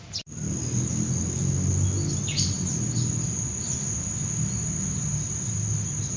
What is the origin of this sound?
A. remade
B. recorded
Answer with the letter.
B